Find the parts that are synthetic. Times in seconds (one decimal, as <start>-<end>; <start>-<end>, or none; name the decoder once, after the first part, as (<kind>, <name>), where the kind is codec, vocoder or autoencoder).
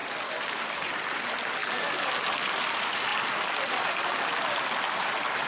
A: 3.1-4.1 (vocoder, BigVGAN v2)